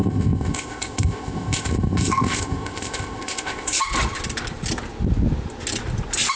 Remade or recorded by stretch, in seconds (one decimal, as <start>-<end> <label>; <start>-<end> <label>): 0.0-3.8 remade; 3.8-6.4 recorded